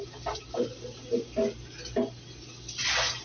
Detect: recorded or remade recorded